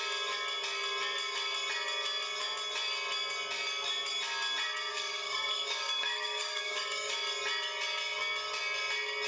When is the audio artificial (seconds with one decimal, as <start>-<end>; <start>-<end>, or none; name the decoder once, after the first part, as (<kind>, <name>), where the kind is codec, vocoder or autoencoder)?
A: 4.9-7.1 (codec, DAC)